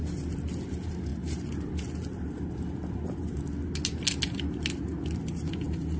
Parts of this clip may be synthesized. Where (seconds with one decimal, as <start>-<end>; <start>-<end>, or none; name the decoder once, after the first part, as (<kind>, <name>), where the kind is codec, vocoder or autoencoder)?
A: none